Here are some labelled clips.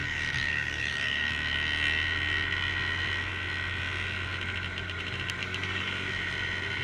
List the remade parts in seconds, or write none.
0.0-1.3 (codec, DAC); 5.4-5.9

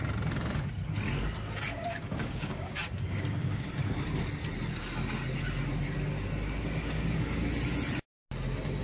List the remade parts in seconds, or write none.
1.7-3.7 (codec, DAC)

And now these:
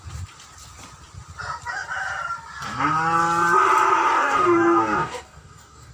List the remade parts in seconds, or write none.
4.1-5.9 (codec, DAC)

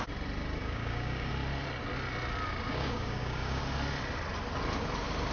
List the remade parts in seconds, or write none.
0.6-1.3 (codec, DAC); 2.7-3.6

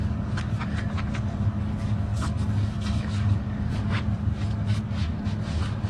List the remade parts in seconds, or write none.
0.0-5.9 (codec, DAC)

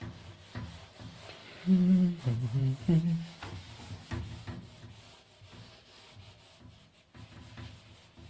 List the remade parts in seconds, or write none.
1.4-2.2 (codec, DAC); 2.6-3.8